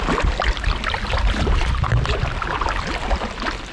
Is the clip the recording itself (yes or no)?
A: yes